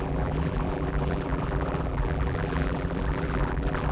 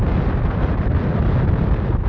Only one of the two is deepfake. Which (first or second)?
first